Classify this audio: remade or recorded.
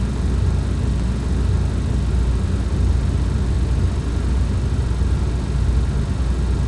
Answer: recorded